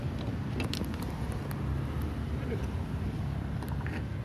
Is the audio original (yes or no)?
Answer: yes